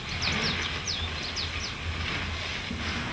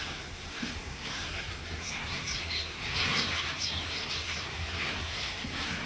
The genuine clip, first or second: first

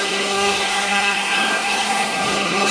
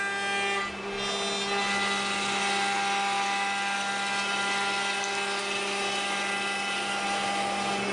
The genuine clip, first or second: second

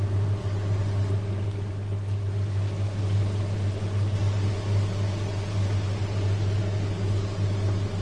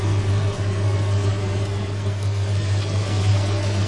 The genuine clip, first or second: first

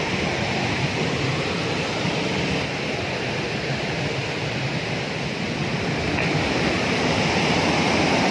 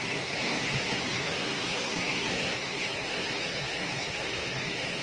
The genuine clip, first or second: first